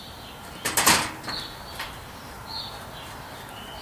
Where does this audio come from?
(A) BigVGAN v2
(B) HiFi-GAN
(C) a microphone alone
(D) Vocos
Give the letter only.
C